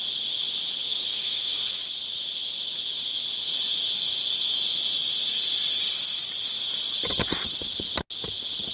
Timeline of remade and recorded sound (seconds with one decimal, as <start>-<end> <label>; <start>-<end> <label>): 0.0-0.8 recorded; 0.8-1.8 remade; 1.8-8.7 recorded

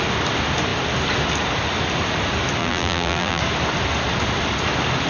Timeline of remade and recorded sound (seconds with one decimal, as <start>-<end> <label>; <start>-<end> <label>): 0.0-2.6 recorded; 2.6-3.4 remade; 3.4-5.1 recorded

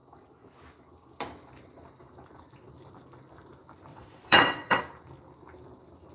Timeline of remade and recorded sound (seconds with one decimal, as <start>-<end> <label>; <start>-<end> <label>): 0.0-3.9 recorded; 3.9-4.8 remade; 4.8-6.1 recorded

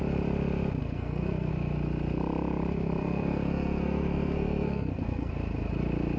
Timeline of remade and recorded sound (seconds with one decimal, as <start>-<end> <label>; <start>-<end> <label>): 0.0-0.8 recorded; 0.8-1.5 remade; 1.5-3.0 recorded; 3.0-5.3 remade; 5.3-6.2 recorded

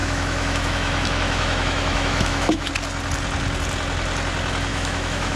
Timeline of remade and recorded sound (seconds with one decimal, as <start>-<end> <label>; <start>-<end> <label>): 0.0-2.7 remade; 2.7-4.7 recorded; 4.7-5.4 remade

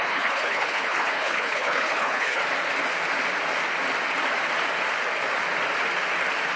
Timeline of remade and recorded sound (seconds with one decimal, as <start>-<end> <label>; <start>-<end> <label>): 0.0-2.4 remade; 2.4-6.6 recorded

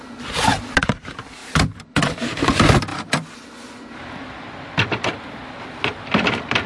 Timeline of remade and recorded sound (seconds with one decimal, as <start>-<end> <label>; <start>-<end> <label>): 0.0-1.4 recorded; 1.4-2.2 remade; 2.2-6.7 recorded